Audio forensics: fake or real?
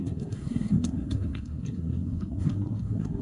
fake